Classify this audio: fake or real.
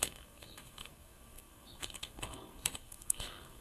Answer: fake